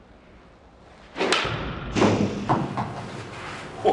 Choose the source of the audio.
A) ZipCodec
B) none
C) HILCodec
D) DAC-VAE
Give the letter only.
B